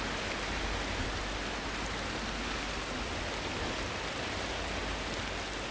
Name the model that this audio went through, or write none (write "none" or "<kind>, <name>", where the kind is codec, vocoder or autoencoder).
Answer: none